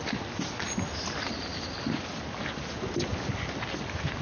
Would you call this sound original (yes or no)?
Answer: yes